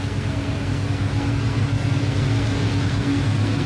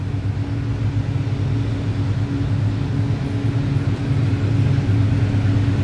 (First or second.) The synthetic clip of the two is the first